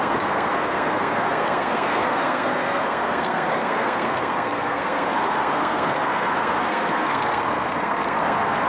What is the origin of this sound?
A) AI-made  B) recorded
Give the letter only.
A